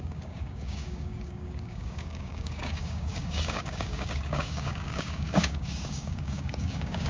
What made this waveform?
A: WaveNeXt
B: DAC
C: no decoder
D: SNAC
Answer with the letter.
B